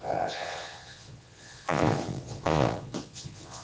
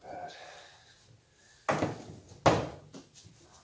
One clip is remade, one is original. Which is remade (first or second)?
first